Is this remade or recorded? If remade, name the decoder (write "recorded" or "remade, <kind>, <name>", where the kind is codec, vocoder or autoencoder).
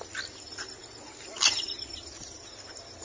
recorded